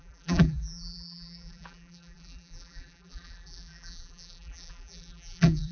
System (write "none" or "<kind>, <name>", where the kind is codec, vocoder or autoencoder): vocoder, BigVGAN v2